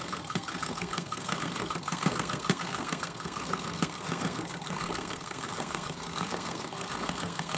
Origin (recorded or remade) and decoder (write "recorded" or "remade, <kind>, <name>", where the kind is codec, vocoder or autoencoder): remade, codec, SNAC